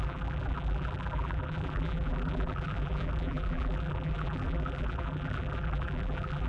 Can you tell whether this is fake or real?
fake